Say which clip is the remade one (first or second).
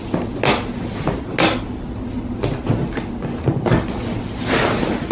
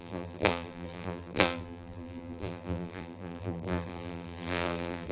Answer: second